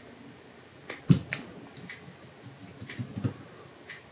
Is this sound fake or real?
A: real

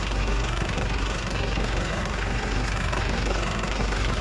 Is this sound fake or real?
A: fake